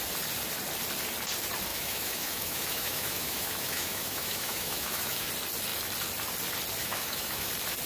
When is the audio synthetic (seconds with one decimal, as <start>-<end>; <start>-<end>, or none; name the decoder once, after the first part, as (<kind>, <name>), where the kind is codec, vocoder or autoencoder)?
1.7-5.3 (autoencoder, DAC-VAE); 6.8-7.5